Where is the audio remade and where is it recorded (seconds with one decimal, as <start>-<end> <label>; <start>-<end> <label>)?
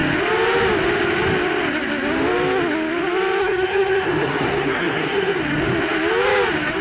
0.0-3.4 recorded; 3.4-5.4 remade; 5.4-6.8 recorded